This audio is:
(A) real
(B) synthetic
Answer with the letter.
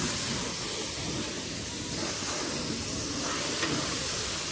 A